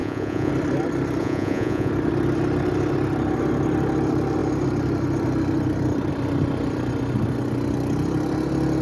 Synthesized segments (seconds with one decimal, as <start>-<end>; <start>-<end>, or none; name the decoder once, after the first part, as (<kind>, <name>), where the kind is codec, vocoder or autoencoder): 0.0-0.5 (vocoder, Vocos); 1.2-1.9